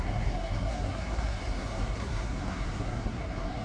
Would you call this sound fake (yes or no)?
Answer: yes